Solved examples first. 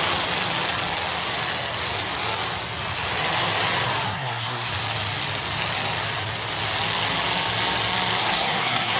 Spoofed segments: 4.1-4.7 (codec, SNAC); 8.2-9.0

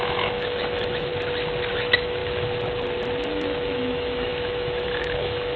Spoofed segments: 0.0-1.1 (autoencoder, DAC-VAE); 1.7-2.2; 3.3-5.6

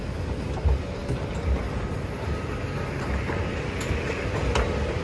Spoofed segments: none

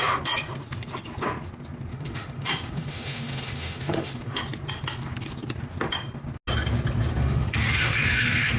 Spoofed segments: 1.9-4.4 (autoencoder, DAC-VAE); 7.1-8.6

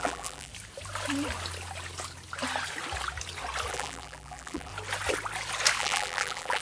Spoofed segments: 0.0-0.5 (vocoder, BigVGAN v2); 3.7-4.7; 5.8-6.6